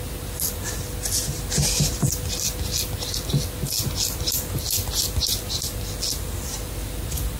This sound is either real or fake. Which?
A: real